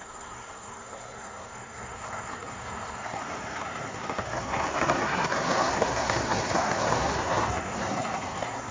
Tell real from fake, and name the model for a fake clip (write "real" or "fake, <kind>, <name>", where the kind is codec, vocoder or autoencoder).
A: fake, codec, SNAC